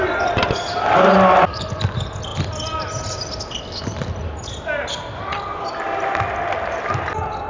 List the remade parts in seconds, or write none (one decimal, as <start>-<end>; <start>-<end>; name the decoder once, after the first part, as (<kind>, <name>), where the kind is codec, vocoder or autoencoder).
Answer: none